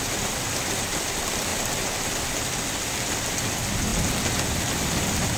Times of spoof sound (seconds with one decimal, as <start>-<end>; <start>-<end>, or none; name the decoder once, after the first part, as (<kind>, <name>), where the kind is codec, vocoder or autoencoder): none